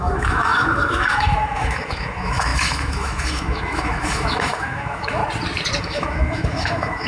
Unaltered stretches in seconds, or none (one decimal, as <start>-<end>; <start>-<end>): 5.2-5.8